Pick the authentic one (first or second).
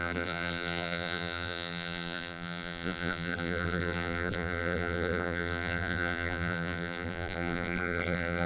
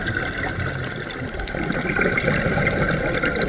second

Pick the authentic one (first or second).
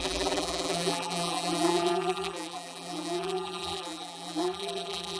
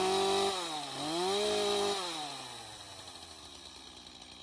second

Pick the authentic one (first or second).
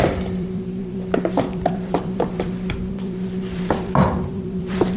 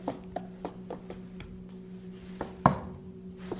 second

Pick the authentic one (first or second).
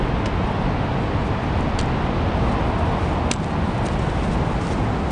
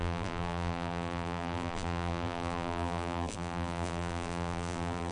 first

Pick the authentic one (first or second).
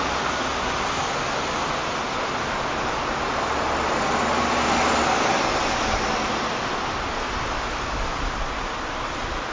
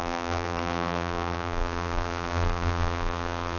first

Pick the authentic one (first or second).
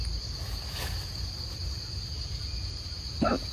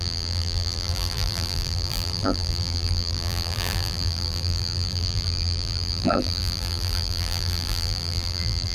first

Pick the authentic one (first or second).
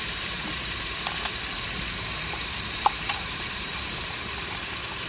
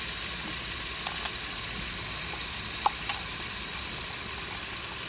second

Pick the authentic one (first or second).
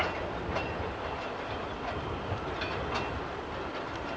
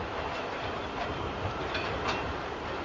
first